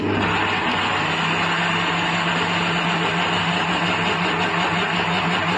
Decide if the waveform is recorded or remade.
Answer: recorded